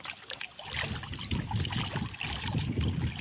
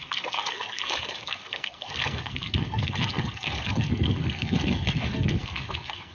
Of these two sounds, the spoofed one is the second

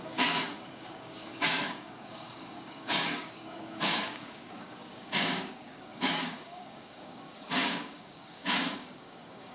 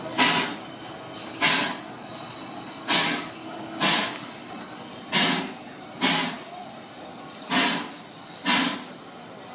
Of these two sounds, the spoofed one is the first